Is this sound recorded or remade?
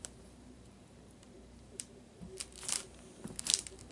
remade